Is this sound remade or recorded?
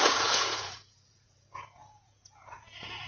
remade